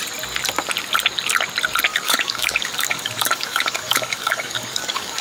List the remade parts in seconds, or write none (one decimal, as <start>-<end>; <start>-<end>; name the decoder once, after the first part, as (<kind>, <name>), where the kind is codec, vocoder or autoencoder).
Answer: 1.9-5.2 (codec, DAC)